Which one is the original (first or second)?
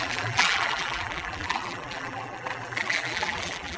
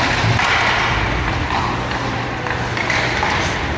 second